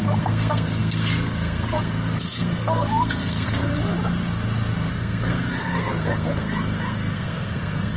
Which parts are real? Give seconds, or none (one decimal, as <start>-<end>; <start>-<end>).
3.7-4.9